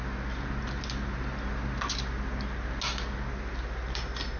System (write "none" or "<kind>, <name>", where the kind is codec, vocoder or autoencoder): none